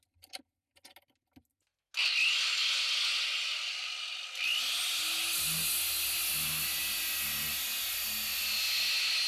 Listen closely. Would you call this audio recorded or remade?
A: recorded